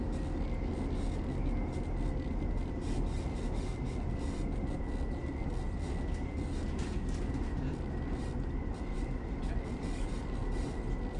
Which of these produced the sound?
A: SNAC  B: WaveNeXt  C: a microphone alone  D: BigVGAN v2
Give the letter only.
C